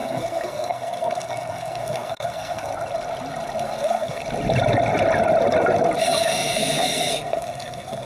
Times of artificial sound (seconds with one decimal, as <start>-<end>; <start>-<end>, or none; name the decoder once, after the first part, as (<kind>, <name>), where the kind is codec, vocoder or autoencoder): 0.0-2.7 (codec, SNAC); 3.6-4.2; 6.0-8.1